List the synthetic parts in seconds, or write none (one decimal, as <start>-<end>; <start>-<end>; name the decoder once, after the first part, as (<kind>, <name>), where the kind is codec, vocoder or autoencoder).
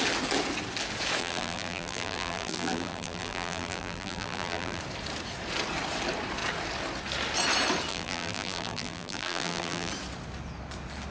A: 1.2-4.8 (vocoder, BigVGAN v2); 7.9-9.9